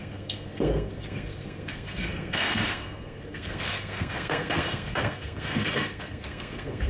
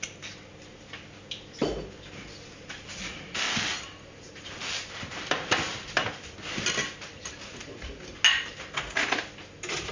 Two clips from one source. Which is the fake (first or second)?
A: first